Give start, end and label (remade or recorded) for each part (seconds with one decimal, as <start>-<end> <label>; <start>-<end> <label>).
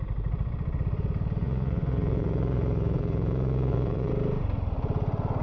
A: 0.0-1.4 recorded; 1.4-4.1 remade; 4.1-5.4 recorded